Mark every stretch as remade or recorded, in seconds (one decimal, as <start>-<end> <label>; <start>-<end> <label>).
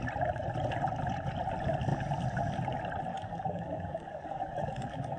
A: 0.0-3.1 recorded; 3.1-5.2 remade